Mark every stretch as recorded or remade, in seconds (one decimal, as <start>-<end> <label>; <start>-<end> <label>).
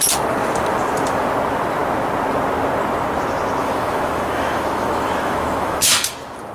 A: 0.0-3.6 recorded; 3.6-5.9 remade; 5.9-6.5 recorded